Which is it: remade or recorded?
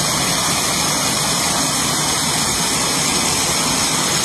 recorded